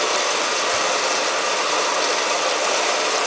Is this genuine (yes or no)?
no